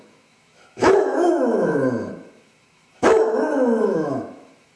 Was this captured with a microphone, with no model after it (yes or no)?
no